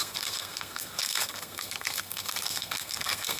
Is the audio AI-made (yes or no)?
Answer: yes